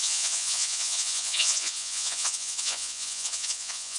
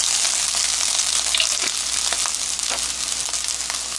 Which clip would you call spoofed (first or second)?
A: first